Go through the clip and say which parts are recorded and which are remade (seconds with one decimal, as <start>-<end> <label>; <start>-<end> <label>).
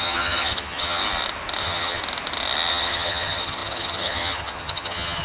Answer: 0.0-1.0 remade; 1.0-1.6 recorded; 1.6-2.0 remade; 2.0-2.7 recorded; 2.7-5.2 remade